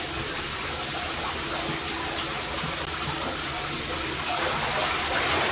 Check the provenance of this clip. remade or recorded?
recorded